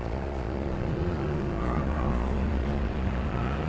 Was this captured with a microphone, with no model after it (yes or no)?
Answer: no